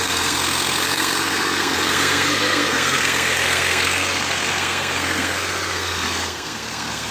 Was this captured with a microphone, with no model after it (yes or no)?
no